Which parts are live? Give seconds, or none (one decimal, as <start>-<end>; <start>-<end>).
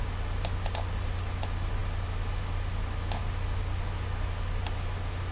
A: 0.0-5.3